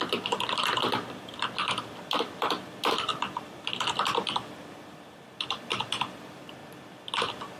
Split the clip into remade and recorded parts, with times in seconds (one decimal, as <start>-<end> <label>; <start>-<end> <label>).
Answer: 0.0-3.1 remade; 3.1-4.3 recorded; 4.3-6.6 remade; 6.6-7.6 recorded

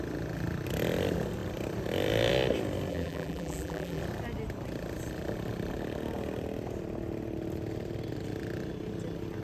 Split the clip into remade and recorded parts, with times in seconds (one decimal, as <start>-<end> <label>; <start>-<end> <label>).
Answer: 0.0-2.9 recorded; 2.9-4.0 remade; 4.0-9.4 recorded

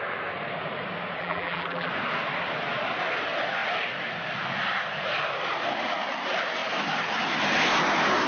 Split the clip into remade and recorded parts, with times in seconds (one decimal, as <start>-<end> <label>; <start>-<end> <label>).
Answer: 0.0-1.2 recorded; 1.2-1.9 remade; 1.9-8.3 recorded